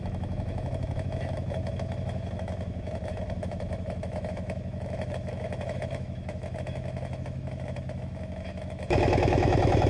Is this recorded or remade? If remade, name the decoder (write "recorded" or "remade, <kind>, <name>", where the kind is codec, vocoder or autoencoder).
remade, autoencoder, DAC-VAE